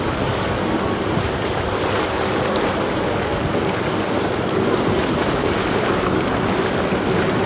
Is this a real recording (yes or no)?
yes